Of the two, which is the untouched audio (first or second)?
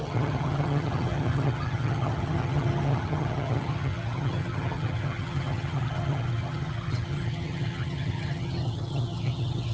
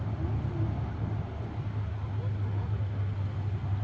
second